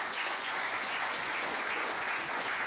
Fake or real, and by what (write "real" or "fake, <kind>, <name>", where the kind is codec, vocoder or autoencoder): fake, vocoder, Vocos